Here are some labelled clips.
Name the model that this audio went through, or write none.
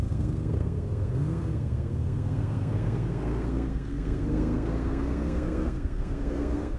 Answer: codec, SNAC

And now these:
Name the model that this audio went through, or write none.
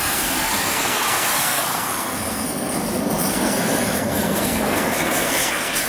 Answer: codec, SNAC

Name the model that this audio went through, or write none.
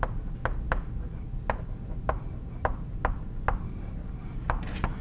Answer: none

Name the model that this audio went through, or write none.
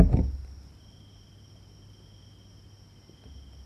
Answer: none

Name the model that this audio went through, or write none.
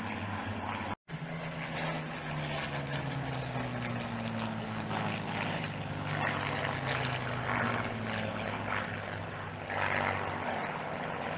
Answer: none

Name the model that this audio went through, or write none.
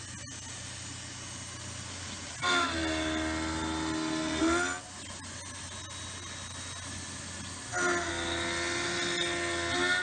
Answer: none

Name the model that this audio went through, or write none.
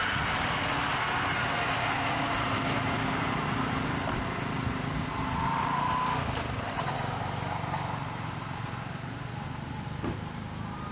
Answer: none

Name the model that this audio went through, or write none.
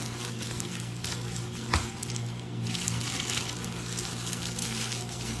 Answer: codec, SNAC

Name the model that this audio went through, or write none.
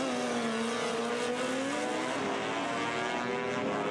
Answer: none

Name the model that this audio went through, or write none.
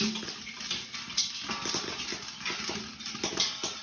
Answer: none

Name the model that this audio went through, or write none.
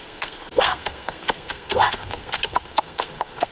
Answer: codec, SNAC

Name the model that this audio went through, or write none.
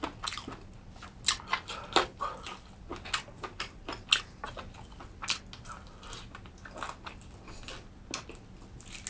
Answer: none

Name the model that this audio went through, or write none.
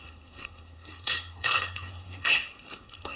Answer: codec, SNAC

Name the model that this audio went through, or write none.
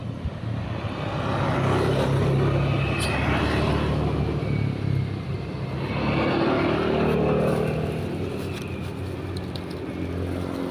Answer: none